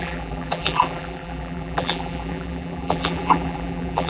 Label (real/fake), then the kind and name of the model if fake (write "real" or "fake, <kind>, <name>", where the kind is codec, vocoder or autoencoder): fake, vocoder, BigVGAN v2